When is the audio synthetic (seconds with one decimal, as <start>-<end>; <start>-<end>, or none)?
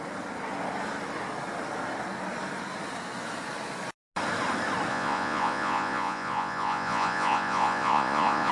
4.9-8.5